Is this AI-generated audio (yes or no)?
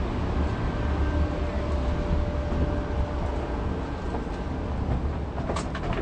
no